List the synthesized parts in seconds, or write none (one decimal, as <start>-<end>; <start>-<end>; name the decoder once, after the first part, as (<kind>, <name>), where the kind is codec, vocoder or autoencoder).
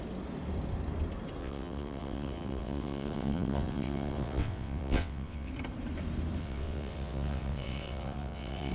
1.4-5.5 (vocoder, WaveNeXt); 6.4-8.7